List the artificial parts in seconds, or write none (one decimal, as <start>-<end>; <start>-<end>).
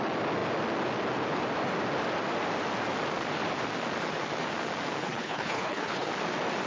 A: 5.0-6.1